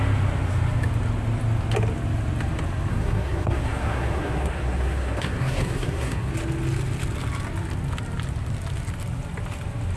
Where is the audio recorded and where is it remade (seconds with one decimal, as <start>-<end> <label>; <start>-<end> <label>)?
0.0-2.9 recorded; 2.9-6.3 remade; 6.3-10.0 recorded